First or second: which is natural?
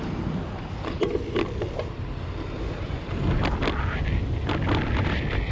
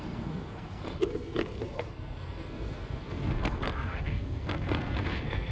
first